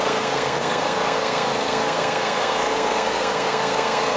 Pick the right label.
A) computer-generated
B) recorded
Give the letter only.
A